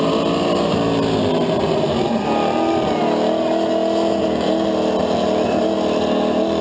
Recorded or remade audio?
recorded